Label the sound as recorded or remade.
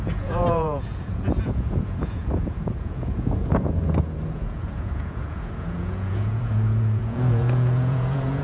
remade